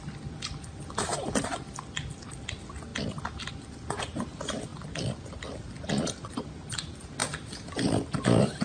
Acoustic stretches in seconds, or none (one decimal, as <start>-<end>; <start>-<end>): 0.0-8.6

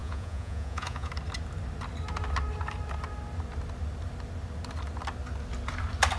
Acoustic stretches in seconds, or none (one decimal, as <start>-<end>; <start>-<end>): 1.1-6.2

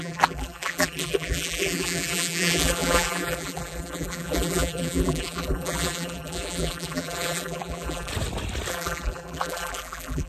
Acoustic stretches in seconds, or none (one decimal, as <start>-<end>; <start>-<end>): 8.1-8.7

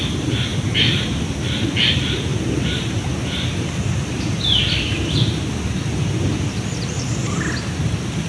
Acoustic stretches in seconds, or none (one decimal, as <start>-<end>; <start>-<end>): 0.0-0.5; 1.7-2.3; 7.1-8.3